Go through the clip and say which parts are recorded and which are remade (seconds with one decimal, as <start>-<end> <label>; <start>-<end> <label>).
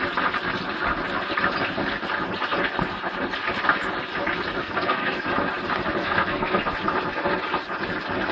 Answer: 0.0-4.6 recorded; 4.6-5.2 remade; 5.2-6.0 recorded; 6.0-6.6 remade; 6.6-8.3 recorded